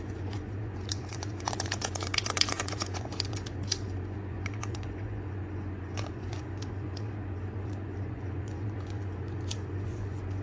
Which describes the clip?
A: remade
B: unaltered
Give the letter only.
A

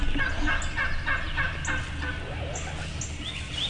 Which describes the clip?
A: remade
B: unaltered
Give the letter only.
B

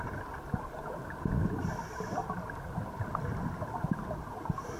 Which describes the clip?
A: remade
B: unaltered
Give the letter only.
B